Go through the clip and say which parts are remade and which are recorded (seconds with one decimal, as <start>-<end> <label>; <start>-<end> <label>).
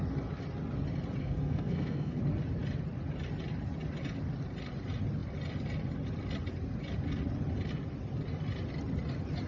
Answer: 0.0-1.2 recorded; 1.2-2.2 remade; 2.2-9.5 recorded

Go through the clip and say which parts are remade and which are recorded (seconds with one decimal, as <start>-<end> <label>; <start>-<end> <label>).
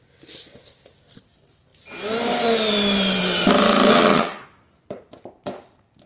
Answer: 0.0-3.9 recorded; 3.9-4.4 remade; 4.4-6.1 recorded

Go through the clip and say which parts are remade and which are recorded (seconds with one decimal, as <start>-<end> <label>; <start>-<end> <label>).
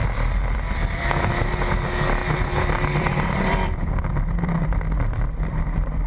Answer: 0.0-1.3 remade; 1.3-2.2 recorded; 2.2-6.1 remade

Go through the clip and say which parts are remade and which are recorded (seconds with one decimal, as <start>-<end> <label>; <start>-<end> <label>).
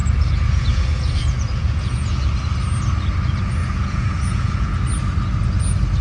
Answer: 0.0-2.3 remade; 2.3-3.6 recorded; 3.6-4.8 remade; 4.8-6.0 recorded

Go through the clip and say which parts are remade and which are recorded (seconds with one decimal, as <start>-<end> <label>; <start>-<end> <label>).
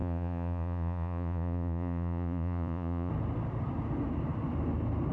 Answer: 0.0-3.1 remade; 3.1-5.1 recorded